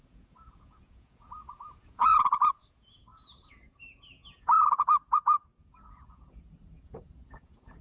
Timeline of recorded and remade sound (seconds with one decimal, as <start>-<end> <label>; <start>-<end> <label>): 0.0-7.8 remade

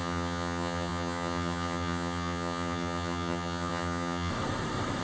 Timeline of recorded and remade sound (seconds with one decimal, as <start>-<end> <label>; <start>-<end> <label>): 0.0-4.3 remade; 4.3-5.0 recorded